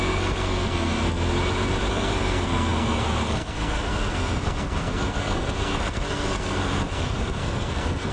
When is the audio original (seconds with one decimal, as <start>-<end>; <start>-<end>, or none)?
1.3-1.9